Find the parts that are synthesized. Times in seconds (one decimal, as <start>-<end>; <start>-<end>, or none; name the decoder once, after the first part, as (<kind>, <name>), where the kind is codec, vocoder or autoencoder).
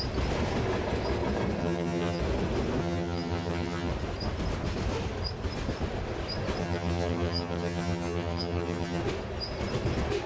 1.6-2.2 (vocoder, HiFi-GAN); 2.8-3.9; 6.6-9.0